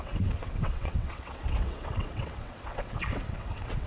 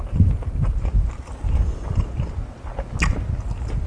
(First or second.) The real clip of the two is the second